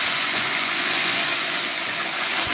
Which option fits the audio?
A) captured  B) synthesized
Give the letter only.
B